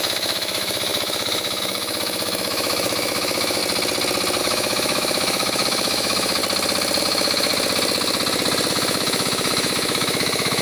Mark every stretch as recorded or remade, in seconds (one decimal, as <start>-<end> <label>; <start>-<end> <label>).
0.0-3.6 remade; 3.6-4.4 recorded; 4.4-6.4 remade; 6.4-7.0 recorded; 7.0-7.5 remade; 7.5-8.7 recorded; 8.7-10.6 remade